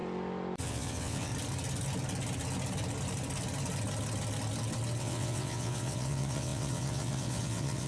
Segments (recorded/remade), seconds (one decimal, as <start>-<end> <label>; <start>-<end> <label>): 0.0-0.6 recorded; 0.6-1.3 remade; 1.3-5.0 recorded; 5.0-7.9 remade